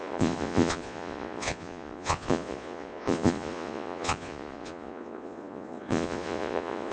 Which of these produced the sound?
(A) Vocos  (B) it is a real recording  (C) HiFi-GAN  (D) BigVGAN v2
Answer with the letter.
A